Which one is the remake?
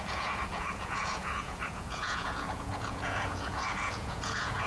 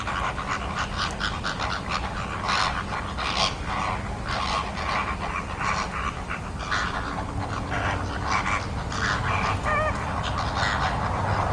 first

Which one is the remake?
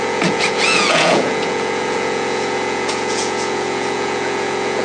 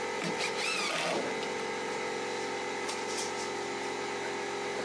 first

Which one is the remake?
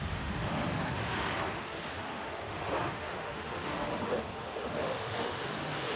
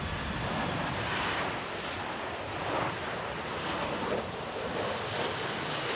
first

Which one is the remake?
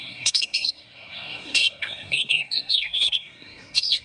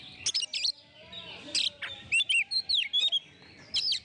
first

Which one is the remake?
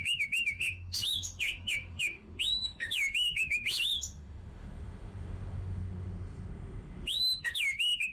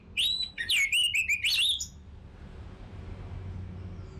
first